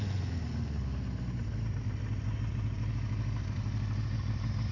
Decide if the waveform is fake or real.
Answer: real